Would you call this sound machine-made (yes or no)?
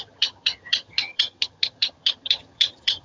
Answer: yes